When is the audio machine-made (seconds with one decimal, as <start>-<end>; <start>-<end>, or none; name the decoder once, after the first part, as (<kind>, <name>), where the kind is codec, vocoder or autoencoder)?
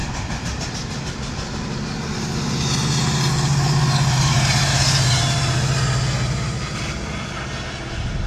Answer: 0.0-0.7 (vocoder, BigVGAN v2); 3.5-5.2